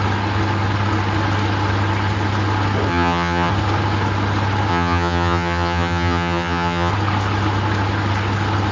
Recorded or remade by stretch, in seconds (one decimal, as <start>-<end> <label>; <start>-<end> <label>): 0.0-2.9 recorded; 2.9-3.5 remade; 3.5-4.7 recorded; 4.7-6.9 remade; 6.9-8.7 recorded